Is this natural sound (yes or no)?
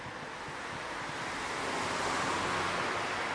yes